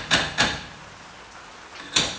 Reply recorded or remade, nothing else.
recorded